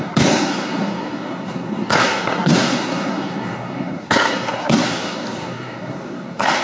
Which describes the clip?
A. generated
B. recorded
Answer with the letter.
A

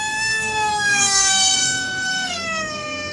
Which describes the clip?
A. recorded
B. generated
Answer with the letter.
B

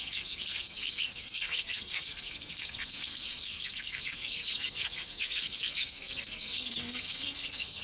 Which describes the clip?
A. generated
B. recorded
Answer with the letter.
A